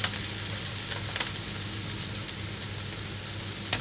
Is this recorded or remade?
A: recorded